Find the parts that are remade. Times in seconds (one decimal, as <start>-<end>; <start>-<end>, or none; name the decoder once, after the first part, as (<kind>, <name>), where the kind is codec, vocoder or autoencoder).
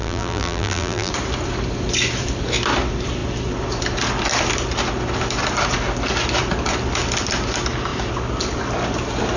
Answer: 0.0-1.1 (vocoder, BigVGAN v2)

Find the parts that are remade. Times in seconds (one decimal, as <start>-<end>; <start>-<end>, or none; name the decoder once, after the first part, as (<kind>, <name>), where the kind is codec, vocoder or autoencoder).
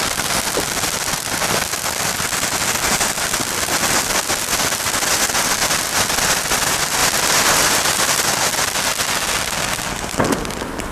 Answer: 7.0-8.2 (vocoder, BigVGAN v2)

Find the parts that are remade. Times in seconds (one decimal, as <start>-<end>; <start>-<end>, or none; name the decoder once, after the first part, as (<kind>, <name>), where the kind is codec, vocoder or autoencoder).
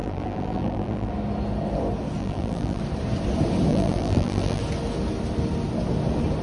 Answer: 0.0-1.1 (vocoder, BigVGAN v2); 2.2-2.8; 3.7-4.6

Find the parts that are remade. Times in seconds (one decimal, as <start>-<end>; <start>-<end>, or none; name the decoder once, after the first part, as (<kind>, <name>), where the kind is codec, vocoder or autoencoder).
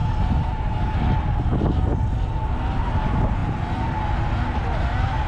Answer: none